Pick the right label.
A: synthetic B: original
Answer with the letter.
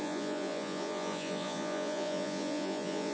A